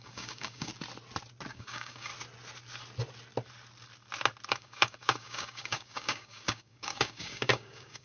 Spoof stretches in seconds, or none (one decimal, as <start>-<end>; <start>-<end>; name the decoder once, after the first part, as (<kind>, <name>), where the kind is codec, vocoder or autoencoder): 0.0-0.7 (codec, DAC); 1.5-2.1; 4.5-8.0